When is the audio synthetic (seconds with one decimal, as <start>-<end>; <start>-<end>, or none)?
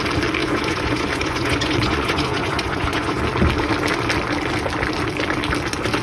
0.4-3.2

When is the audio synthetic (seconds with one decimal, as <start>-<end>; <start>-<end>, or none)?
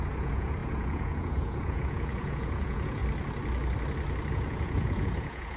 0.0-3.0; 4.3-5.6